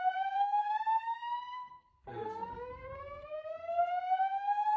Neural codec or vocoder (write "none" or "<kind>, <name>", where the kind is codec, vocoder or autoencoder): codec, SNAC